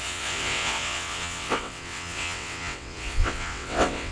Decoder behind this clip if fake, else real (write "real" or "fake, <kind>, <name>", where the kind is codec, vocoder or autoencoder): fake, vocoder, WaveNeXt